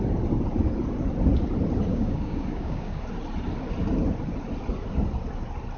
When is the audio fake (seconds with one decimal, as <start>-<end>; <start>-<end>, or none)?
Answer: 1.9-3.0

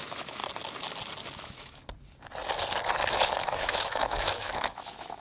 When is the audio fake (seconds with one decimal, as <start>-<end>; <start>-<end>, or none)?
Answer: 0.0-0.4; 1.3-1.8; 3.1-5.2

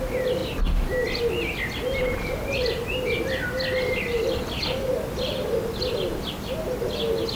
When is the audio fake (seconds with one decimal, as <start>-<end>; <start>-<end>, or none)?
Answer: none

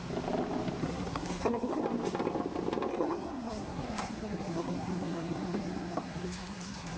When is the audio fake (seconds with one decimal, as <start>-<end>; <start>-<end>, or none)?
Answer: 0.8-1.8; 2.9-7.0